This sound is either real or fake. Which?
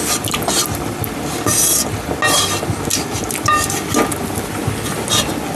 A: real